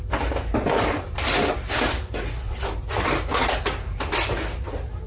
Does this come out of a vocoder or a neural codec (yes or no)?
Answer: no